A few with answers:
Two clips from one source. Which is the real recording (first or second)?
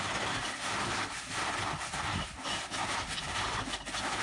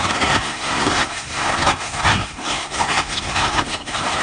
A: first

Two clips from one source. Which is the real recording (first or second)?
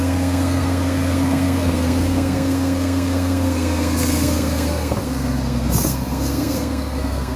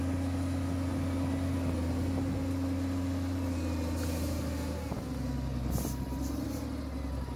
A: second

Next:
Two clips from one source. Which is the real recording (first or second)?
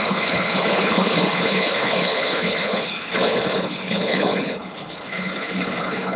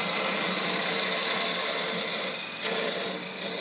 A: second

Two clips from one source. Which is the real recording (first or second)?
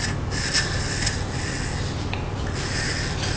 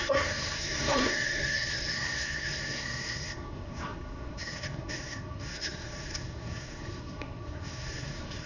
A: first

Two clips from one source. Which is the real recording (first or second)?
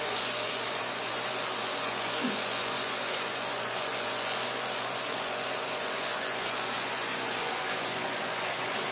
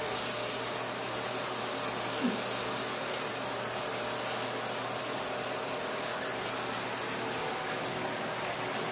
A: second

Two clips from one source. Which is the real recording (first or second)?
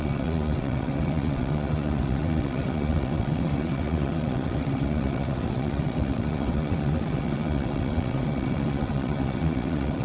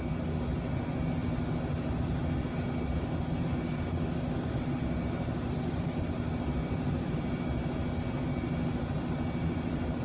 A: second